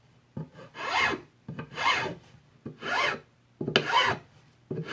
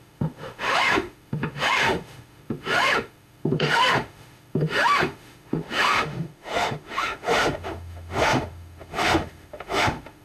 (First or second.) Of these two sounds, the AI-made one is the second